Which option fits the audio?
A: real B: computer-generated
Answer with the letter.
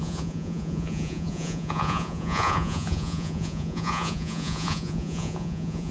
B